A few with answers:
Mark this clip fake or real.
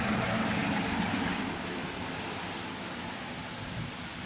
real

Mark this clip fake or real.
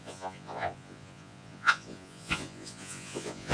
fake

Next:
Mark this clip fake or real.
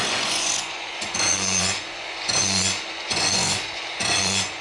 fake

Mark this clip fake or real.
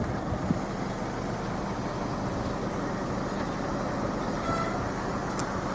real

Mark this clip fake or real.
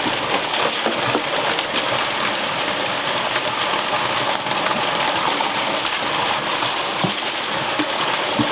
real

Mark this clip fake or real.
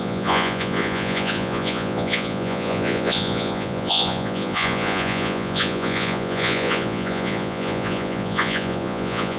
fake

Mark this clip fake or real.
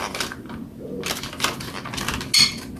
real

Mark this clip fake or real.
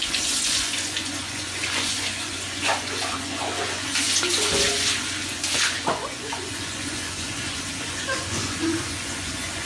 fake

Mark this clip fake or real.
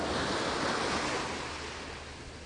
real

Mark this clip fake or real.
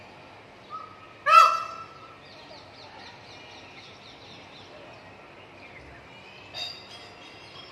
real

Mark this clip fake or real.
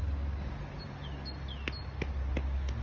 real